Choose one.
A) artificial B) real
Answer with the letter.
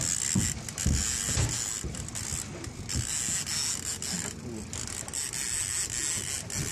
B